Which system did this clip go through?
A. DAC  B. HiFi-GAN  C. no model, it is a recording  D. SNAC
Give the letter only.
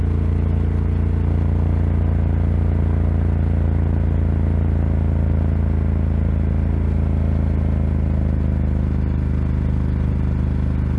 C